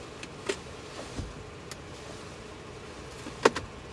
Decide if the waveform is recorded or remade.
recorded